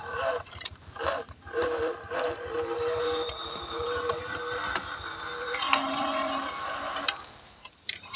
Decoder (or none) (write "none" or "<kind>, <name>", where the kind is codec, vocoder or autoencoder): vocoder, BigVGAN v2